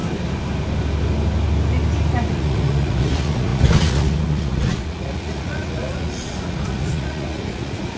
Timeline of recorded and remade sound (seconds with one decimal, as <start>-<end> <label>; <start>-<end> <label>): 0.0-2.3 recorded; 2.3-8.0 remade